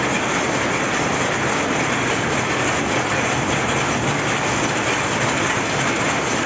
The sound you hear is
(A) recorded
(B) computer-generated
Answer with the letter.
A